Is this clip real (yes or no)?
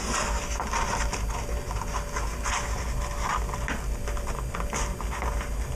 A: yes